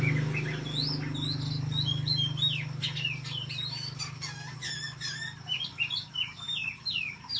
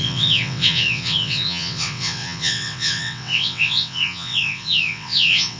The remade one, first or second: second